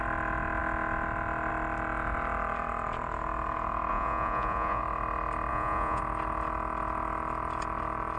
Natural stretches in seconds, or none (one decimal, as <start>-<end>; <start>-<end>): 0.0-3.9; 4.8-5.5; 6.0-8.2